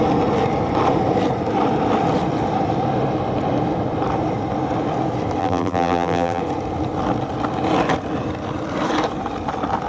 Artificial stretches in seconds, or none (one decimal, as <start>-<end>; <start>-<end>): 5.4-6.4